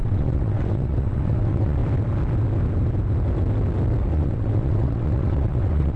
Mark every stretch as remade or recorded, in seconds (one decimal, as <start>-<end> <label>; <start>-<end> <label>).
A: 0.0-1.8 remade; 1.8-4.1 recorded; 4.1-6.0 remade